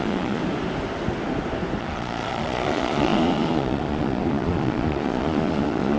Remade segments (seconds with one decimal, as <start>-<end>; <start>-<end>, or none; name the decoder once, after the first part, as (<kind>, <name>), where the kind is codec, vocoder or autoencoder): 0.0-0.4 (vocoder, Vocos); 1.8-6.0